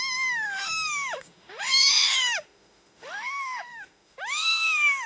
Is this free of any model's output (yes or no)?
no